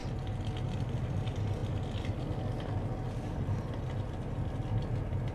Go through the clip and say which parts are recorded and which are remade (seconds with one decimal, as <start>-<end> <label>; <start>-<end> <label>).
0.0-5.3 recorded